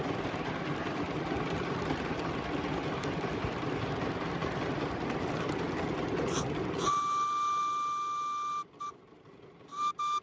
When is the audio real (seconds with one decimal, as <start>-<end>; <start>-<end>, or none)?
0.0-10.2